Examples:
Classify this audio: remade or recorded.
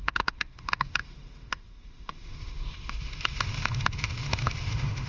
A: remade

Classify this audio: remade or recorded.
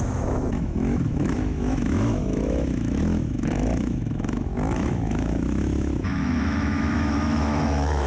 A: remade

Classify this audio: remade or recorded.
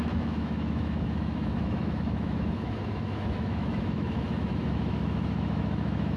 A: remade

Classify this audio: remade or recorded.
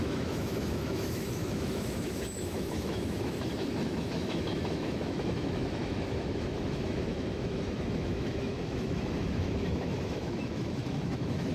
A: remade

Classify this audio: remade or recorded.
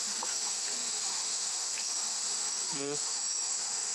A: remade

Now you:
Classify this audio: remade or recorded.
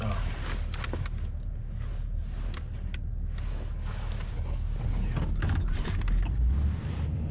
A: recorded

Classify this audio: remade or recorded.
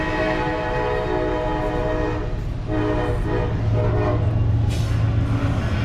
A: recorded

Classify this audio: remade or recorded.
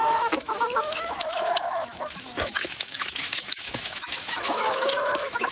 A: remade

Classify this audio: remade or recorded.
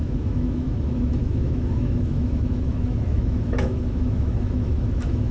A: remade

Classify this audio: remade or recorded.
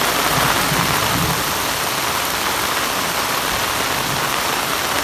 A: recorded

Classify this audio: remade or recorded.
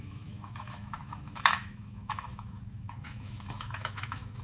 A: remade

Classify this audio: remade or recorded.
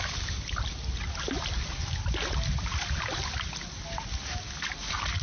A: recorded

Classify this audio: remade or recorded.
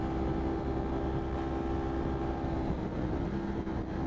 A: recorded